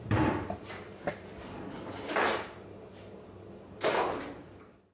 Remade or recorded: remade